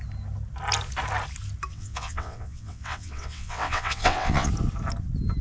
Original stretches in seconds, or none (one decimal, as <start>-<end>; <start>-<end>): 0.0-1.7; 4.5-5.4